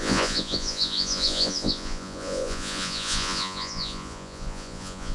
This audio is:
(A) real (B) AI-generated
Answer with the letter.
B